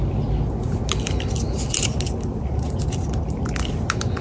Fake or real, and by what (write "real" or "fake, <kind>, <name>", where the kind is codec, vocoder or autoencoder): real